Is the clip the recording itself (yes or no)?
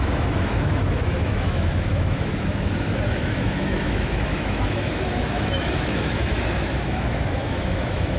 no